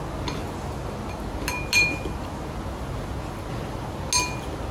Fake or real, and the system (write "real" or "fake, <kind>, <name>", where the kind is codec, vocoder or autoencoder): real